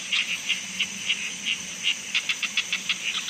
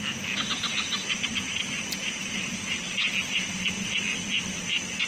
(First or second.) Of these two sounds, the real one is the second